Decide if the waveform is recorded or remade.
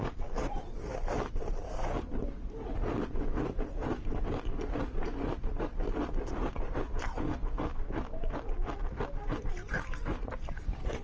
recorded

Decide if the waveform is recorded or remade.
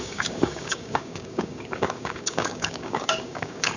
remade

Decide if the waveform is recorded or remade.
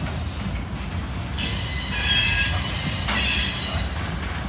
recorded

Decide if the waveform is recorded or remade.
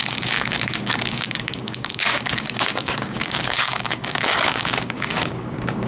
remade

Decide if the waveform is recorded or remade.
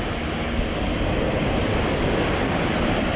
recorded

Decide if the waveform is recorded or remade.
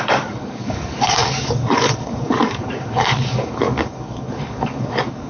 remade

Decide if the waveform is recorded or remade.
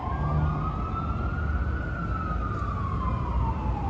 recorded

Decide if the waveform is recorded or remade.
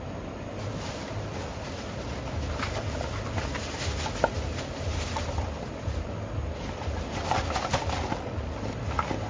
recorded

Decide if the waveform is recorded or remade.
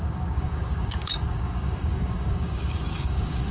remade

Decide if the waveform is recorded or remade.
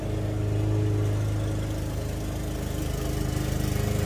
recorded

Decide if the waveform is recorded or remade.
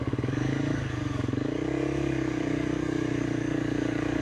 remade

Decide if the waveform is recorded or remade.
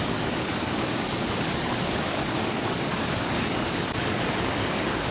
remade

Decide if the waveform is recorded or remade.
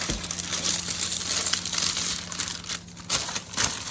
recorded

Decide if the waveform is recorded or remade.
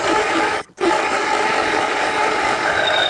remade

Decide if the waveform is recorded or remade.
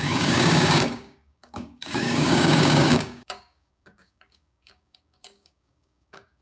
remade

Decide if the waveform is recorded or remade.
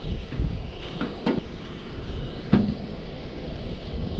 remade